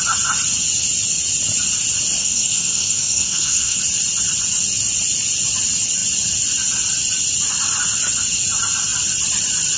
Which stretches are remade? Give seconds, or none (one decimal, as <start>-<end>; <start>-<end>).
2.2-3.8